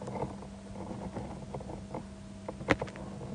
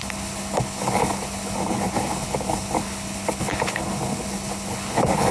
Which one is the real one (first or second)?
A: first